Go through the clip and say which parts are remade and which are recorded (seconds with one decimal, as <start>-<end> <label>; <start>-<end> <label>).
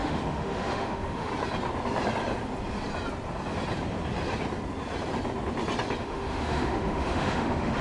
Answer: 0.0-1.3 remade; 1.3-6.0 recorded; 6.0-7.8 remade